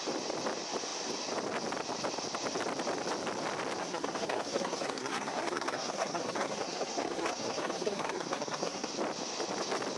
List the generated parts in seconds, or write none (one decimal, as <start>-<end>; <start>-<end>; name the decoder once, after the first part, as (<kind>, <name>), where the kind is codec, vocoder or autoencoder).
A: 3.8-8.9 (codec, SNAC)